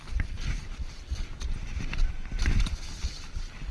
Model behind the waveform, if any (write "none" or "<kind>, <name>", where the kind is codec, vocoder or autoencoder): none